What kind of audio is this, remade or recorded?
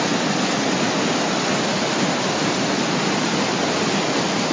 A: recorded